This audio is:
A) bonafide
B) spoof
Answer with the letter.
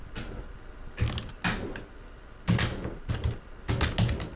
A